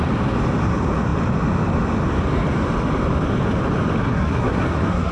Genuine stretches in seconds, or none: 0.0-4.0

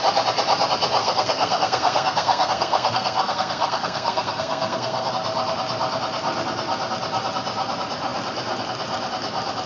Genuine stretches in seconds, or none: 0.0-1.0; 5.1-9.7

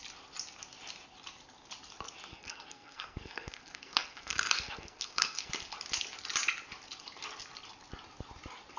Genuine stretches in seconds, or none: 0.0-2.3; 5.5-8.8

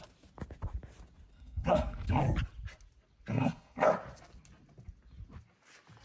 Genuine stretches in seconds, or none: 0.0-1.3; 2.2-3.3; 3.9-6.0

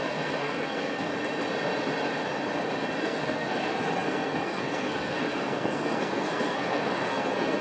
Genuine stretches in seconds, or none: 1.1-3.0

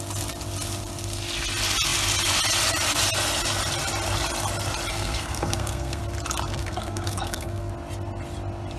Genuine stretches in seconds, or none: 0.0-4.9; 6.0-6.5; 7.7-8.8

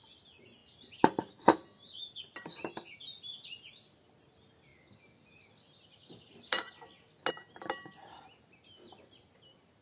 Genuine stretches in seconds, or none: 0.0-9.8

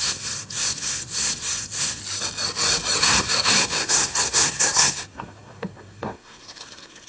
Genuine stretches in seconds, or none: 2.0-3.0